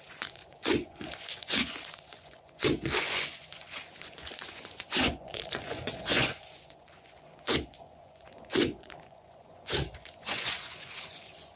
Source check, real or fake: fake